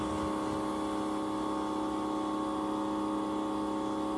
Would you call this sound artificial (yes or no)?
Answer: no